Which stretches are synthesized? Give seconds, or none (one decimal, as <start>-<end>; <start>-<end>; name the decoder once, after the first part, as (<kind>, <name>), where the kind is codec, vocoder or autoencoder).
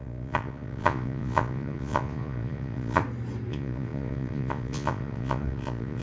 0.0-3.0 (vocoder, Vocos); 3.5-6.0